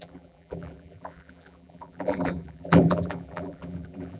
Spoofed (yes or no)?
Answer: yes